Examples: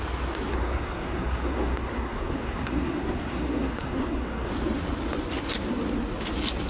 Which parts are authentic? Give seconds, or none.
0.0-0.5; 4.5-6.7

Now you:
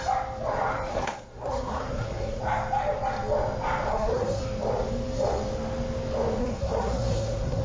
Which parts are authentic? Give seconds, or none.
0.0-0.9; 2.4-3.9; 4.4-6.4

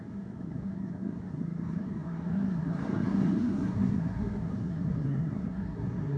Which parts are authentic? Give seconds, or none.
none

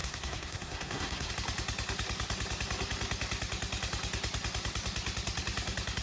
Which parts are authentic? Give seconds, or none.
1.3-6.0

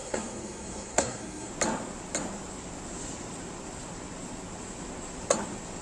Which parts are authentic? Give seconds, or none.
1.5-5.8

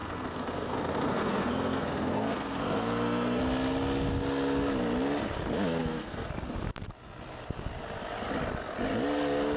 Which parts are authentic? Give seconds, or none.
3.4-5.8; 6.3-9.6

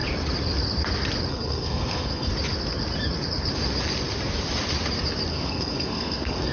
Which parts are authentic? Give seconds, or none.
0.0-1.3; 2.3-5.3

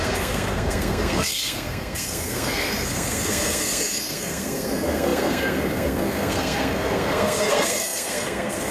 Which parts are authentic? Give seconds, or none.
none